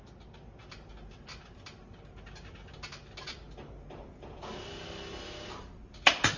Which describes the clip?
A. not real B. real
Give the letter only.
B